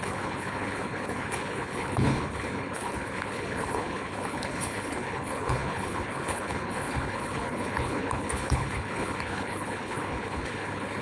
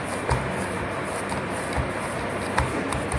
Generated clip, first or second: first